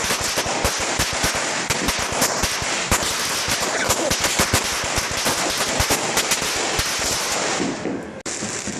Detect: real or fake real